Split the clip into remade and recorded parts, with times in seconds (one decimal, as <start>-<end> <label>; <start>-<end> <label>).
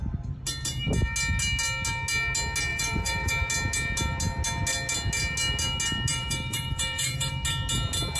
0.0-2.7 recorded; 2.7-3.3 remade; 3.3-6.1 recorded; 6.1-7.3 remade; 7.3-8.2 recorded